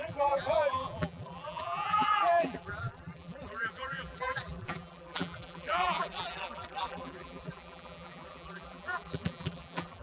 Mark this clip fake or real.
fake